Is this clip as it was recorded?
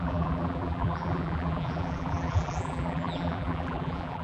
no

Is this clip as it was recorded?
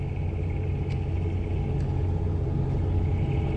yes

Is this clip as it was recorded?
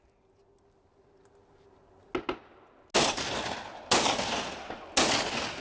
yes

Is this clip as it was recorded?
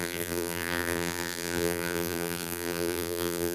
no